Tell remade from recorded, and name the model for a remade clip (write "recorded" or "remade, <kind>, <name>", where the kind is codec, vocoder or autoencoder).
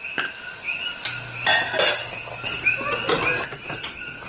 recorded